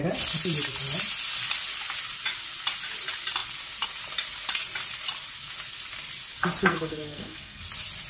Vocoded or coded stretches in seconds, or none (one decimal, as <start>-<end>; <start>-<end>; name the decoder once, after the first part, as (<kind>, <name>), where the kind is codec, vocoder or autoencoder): 6.6-7.6 (codec, SNAC)